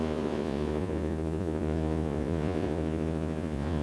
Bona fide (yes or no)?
no